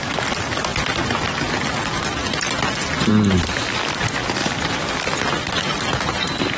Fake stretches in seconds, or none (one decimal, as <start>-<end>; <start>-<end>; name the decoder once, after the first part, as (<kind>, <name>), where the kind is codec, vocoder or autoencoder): 0.0-0.7 (vocoder, BigVGAN v2); 3.1-6.6